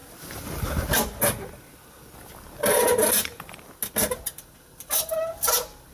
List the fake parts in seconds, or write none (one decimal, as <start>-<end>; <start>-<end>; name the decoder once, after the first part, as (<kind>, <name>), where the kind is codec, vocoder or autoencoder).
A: none